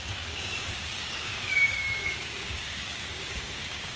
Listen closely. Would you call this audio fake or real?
fake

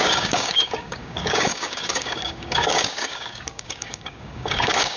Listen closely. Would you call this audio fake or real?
fake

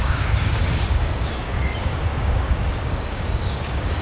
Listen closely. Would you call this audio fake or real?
fake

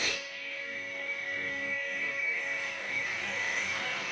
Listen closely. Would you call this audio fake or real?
fake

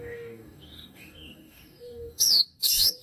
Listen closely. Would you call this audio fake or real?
fake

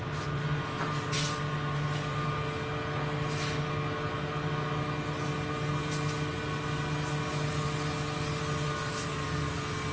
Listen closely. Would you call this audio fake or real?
real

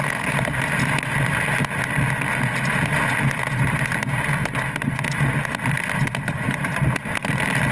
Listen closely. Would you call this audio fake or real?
real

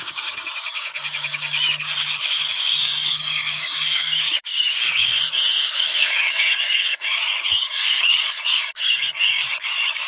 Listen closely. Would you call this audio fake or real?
fake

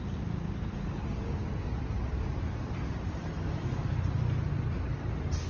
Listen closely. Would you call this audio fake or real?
real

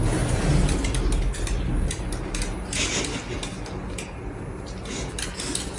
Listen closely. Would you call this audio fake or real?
real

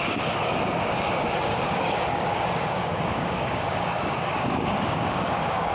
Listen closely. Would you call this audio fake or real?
fake